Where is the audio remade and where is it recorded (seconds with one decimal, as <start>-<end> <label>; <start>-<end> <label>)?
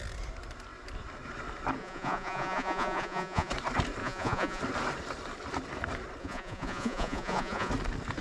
0.0-1.8 recorded; 1.8-3.5 remade; 3.5-4.0 recorded; 4.0-4.6 remade; 4.6-6.2 recorded; 6.2-7.7 remade; 7.7-8.2 recorded